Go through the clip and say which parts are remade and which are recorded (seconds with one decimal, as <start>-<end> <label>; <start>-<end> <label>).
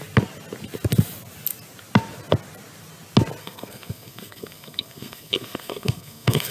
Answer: 0.0-3.4 recorded; 3.4-6.5 remade